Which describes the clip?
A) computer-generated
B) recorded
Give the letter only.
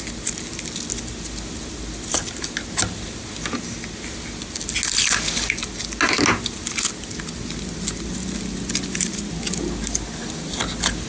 B